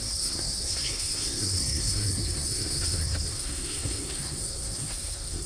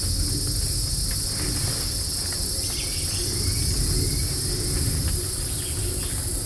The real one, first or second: second